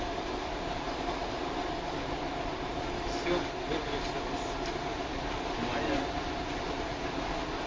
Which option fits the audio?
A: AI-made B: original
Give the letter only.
B